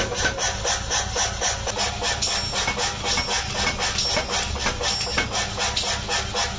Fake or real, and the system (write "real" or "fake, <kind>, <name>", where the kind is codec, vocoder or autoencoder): real